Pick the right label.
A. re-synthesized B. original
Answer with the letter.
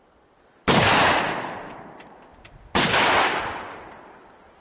B